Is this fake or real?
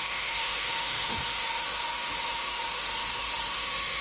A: fake